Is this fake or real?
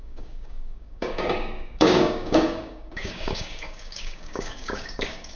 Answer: fake